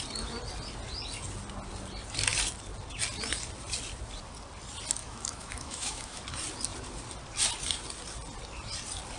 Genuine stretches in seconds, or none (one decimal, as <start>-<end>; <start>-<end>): 0.0-5.0; 6.2-9.2

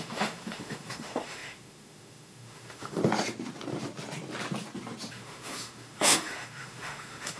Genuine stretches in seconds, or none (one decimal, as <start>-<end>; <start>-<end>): 3.0-5.1

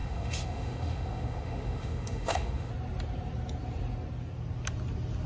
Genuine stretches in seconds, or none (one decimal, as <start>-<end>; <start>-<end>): 2.7-5.3

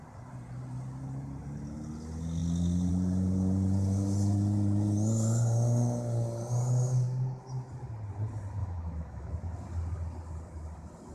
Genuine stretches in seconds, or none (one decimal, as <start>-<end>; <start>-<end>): 0.0-8.6; 9.3-11.1

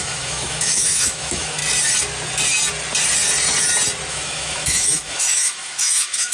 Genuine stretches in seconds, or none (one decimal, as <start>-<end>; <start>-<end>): 1.6-4.1